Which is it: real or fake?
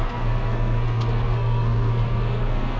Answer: fake